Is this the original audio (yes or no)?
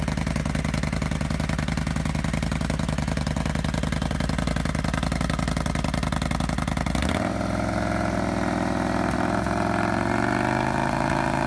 yes